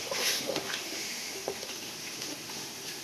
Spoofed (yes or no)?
yes